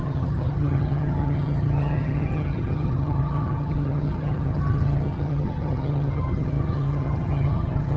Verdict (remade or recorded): remade